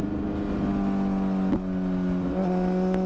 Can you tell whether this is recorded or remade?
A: recorded